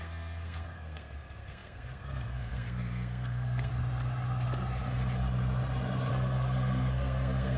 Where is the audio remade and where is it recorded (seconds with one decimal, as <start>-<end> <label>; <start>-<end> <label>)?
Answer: 0.0-3.7 remade; 3.7-6.1 recorded; 6.1-7.6 remade